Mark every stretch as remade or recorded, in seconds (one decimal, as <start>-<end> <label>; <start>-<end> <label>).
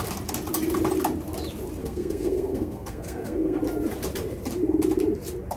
0.0-1.8 recorded; 1.8-3.6 remade; 3.6-5.6 recorded